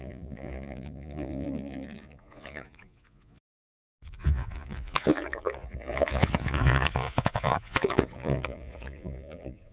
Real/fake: fake